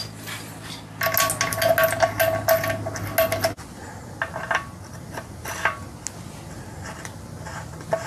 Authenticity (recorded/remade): recorded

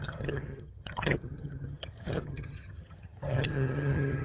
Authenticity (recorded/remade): remade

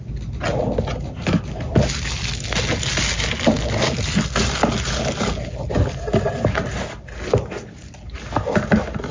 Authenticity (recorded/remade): recorded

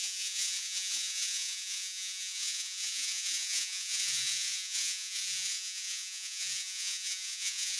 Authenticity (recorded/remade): remade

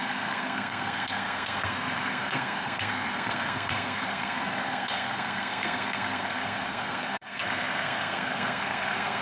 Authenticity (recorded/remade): remade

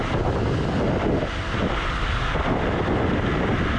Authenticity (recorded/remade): recorded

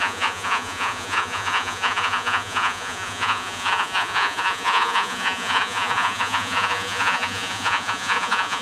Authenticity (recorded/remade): remade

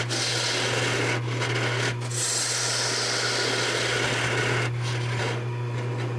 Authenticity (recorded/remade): recorded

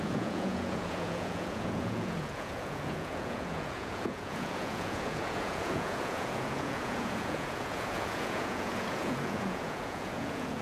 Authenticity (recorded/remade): remade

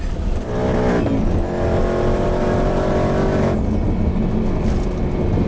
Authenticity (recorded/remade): recorded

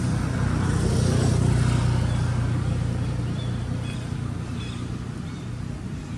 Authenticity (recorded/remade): recorded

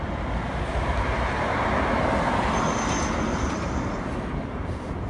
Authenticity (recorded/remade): recorded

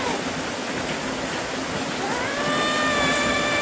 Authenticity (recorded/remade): recorded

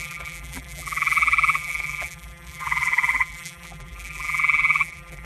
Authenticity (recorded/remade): remade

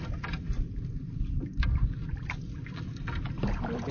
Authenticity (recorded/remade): recorded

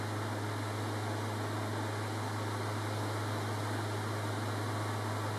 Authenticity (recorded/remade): recorded